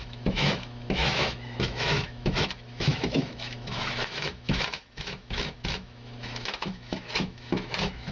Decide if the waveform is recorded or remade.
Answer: remade